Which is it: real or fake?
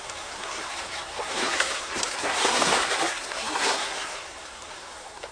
fake